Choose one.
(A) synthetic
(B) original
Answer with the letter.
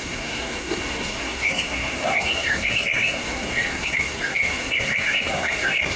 A